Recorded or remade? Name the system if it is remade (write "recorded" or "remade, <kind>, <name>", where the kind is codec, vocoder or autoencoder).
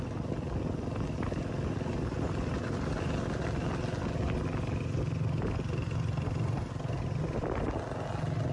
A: recorded